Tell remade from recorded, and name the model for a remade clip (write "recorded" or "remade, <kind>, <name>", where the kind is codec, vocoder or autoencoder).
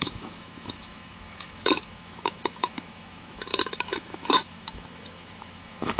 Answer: remade, autoencoder, DAC-VAE